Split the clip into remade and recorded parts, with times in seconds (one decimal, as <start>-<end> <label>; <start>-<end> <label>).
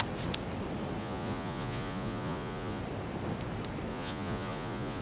0.0-1.0 recorded; 1.0-2.8 remade; 2.8-3.9 recorded; 3.9-5.0 remade